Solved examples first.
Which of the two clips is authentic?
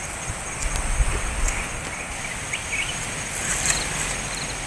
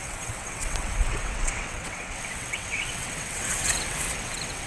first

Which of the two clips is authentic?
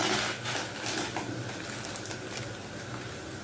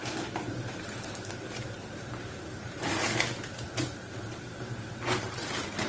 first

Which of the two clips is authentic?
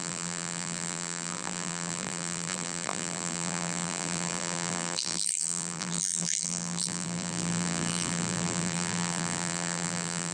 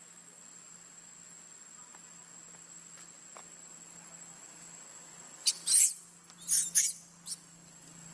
second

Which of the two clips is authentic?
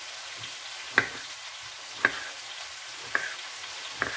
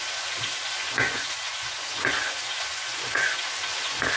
first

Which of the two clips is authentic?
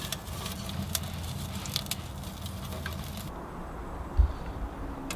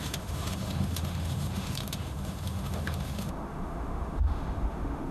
first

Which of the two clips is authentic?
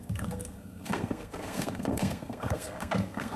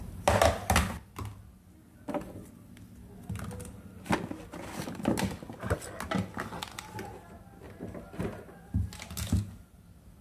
second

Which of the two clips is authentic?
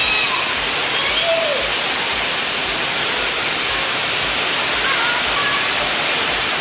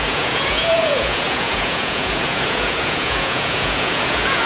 first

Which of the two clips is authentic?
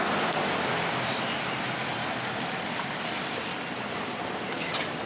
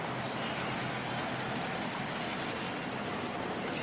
second